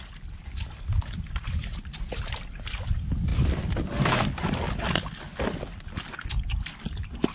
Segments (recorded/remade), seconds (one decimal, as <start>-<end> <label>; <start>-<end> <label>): 0.0-7.3 recorded